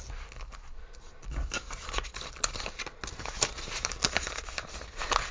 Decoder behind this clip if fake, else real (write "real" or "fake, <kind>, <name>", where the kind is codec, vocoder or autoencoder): real